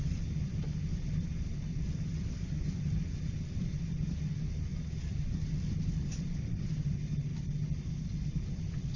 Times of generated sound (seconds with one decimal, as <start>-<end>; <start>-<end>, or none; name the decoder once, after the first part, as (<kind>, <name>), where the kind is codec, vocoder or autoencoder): 0.9-4.3 (vocoder, BigVGAN v2); 4.7-6.6